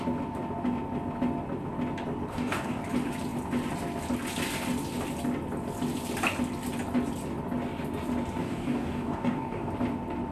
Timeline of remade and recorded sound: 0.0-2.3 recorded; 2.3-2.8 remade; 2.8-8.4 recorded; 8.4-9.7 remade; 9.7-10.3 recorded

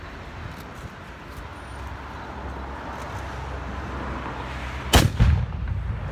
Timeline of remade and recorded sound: 0.0-6.1 recorded